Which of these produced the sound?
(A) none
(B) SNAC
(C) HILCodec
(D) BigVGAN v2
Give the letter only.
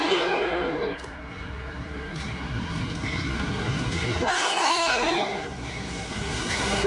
B